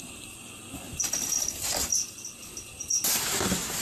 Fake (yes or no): no